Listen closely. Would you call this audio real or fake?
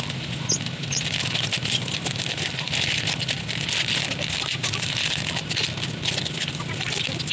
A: real